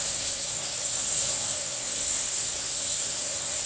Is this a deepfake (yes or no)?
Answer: yes